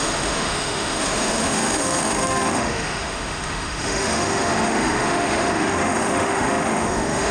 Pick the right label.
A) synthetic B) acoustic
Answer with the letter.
A